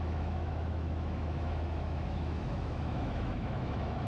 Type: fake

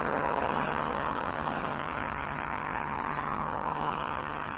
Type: fake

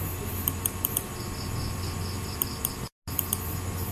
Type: real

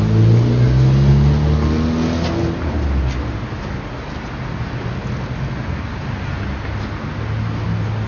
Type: real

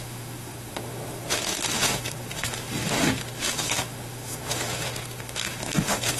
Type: fake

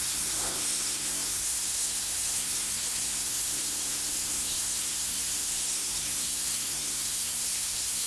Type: fake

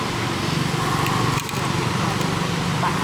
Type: real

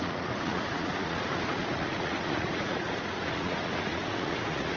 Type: fake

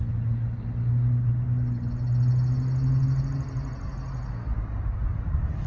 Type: real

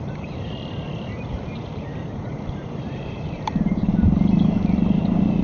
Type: fake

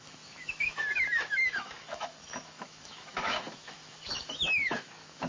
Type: fake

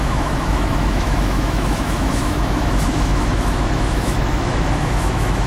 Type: fake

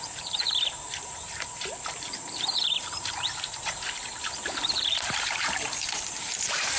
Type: fake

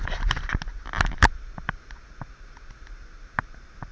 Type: real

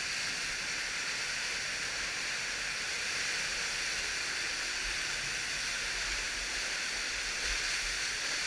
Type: real